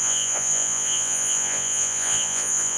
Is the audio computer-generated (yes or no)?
yes